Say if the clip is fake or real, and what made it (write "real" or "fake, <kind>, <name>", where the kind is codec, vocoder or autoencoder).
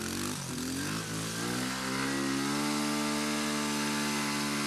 real